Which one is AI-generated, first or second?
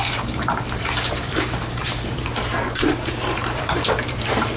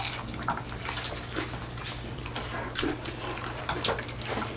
first